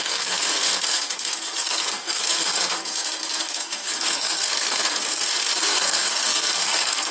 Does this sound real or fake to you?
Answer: fake